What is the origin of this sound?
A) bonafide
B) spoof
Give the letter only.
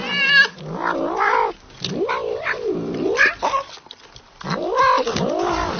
A